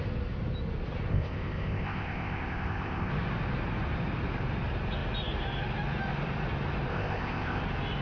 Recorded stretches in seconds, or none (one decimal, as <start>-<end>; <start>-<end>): 0.0-1.1; 3.1-6.9; 7.6-8.0